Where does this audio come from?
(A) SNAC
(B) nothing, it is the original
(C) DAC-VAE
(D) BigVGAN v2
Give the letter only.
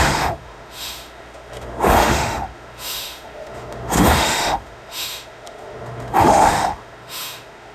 C